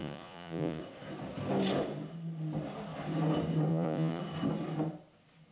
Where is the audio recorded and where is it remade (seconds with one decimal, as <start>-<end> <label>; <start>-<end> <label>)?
0.0-0.8 remade; 0.8-3.7 recorded; 3.7-4.2 remade; 4.2-5.5 recorded

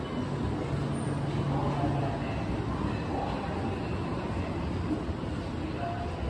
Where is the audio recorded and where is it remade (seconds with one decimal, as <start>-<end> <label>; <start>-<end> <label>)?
0.0-6.3 recorded

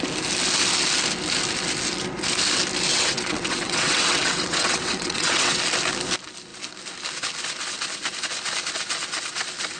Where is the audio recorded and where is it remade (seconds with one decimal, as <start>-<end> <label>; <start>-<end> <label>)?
0.0-2.9 recorded; 2.9-5.6 remade; 5.6-9.8 recorded